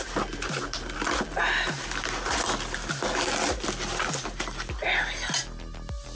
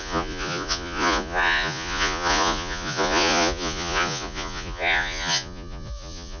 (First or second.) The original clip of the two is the first